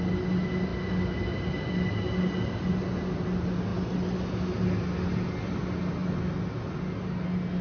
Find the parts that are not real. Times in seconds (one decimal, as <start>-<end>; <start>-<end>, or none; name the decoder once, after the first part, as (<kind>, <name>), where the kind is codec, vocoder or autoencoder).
none